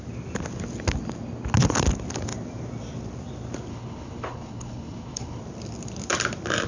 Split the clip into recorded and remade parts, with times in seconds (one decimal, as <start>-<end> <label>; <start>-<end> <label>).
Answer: 0.0-3.7 recorded; 3.7-5.4 remade; 5.4-6.7 recorded